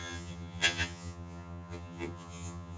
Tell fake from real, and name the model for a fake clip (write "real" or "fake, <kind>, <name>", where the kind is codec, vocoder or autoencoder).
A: fake, vocoder, HiFi-GAN